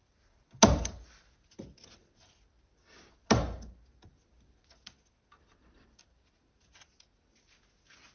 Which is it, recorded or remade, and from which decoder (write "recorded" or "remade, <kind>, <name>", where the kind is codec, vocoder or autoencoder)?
recorded